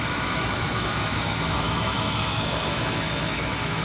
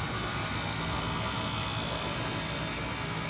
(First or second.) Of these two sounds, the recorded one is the second